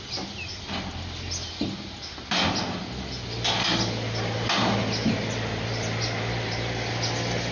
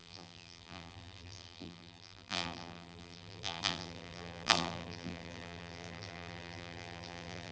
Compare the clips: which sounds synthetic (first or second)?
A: second